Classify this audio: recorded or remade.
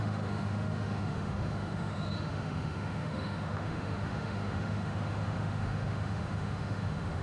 remade